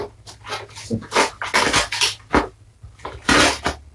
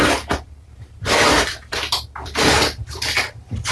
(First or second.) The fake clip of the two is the second